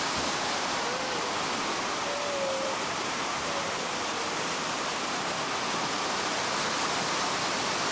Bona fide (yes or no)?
yes